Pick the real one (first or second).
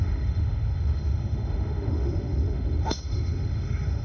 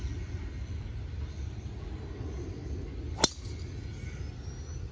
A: second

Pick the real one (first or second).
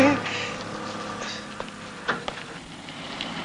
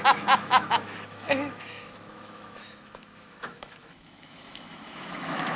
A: first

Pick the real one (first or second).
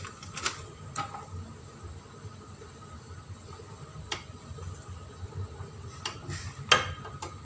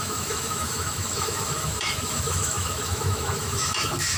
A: first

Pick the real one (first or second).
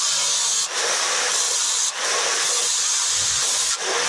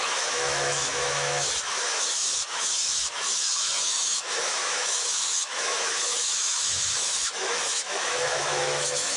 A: first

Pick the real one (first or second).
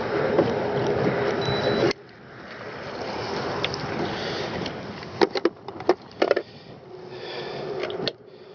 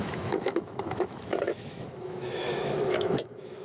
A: first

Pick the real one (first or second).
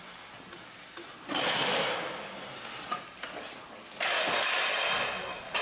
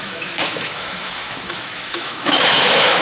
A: first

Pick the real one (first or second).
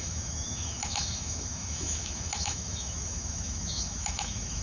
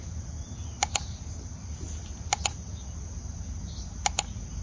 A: second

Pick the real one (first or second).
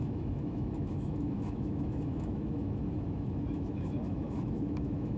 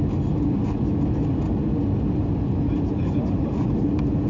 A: second